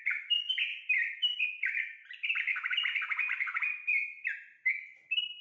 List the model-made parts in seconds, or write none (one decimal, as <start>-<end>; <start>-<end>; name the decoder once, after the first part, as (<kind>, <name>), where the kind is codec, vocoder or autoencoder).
0.7-1.4 (vocoder, BigVGAN v2); 2.5-3.6